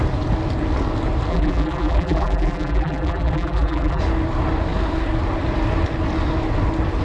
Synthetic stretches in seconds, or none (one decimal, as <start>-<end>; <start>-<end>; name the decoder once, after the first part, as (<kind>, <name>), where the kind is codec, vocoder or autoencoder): 1.3-4.0 (vocoder, BigVGAN v2)

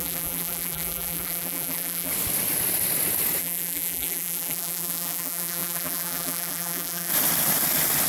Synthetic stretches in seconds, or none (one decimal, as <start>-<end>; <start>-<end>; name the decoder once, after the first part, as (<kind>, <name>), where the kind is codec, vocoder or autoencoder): 0.0-2.1 (vocoder, BigVGAN v2); 3.4-7.1

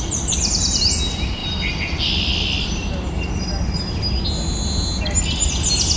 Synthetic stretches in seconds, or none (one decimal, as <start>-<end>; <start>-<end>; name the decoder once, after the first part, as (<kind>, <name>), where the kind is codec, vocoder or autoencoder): none

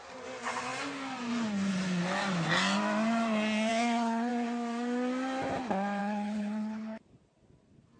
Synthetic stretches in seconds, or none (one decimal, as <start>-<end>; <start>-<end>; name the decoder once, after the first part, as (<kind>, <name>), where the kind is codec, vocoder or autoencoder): 3.7-4.3 (codec, HILCodec); 6.0-7.0

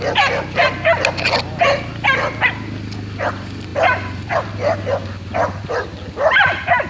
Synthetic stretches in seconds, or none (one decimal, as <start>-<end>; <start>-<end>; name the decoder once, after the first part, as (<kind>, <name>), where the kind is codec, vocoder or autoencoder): none

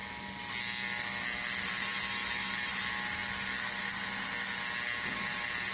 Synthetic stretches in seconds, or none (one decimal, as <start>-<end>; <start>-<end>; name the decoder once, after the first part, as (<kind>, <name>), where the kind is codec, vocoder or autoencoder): none

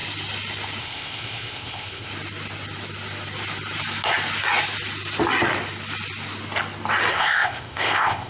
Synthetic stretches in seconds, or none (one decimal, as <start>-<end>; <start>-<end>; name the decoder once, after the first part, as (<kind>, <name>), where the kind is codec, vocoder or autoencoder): 0.8-2.1 (codec, ZipCodec); 7.1-8.3

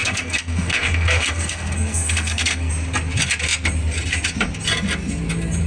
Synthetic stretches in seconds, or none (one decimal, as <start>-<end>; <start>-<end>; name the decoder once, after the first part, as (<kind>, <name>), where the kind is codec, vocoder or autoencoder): 0.0-2.7 (codec, SNAC)